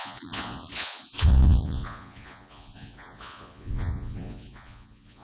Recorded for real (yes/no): no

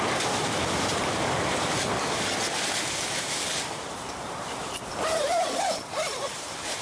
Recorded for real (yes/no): no